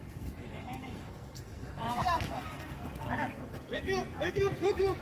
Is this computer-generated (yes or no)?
yes